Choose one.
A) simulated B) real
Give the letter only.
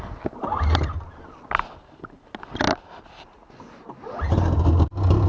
B